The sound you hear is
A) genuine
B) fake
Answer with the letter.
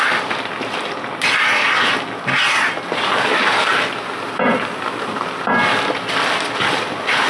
A